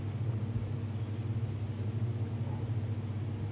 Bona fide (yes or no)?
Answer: yes